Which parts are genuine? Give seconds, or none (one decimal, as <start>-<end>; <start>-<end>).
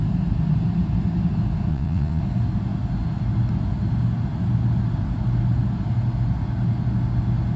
0.0-1.7; 2.2-7.6